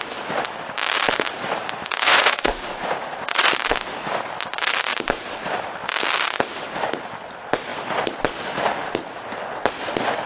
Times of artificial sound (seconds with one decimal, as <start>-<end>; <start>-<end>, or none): 1.9-3.5